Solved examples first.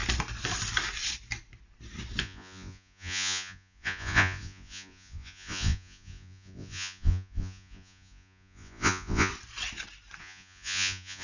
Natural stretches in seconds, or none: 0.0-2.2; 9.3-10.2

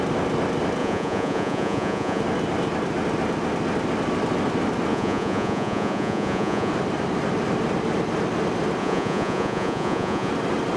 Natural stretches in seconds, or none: 0.0-0.8; 2.2-4.9; 6.7-8.8; 10.3-10.8